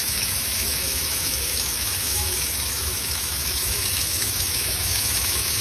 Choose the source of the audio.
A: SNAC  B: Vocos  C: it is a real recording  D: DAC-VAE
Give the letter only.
D